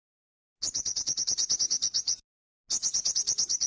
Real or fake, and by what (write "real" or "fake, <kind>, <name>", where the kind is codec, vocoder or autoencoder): real